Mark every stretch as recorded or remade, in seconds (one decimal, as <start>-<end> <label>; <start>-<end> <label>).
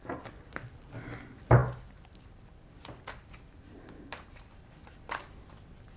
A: 0.0-6.0 recorded